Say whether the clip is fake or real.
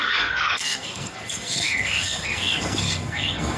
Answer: fake